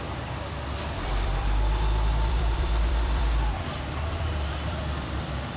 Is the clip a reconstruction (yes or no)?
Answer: yes